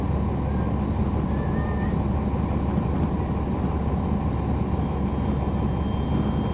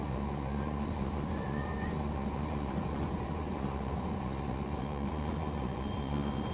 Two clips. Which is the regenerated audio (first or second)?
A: second